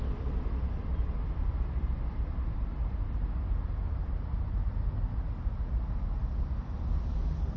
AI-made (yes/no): no